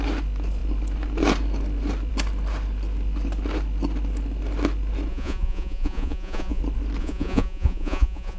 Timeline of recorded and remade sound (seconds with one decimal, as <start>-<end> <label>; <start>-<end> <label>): 0.0-5.1 recorded; 5.1-6.6 remade; 6.6-7.0 recorded; 7.0-8.4 remade